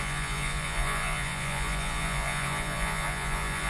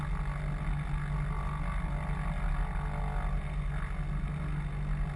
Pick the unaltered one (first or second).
second